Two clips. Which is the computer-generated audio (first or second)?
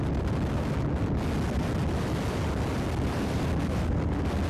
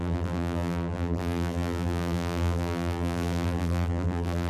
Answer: second